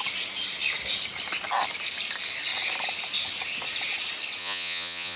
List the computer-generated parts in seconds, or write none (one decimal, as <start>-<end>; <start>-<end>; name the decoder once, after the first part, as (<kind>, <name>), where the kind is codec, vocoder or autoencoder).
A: 4.4-5.2 (vocoder, Vocos)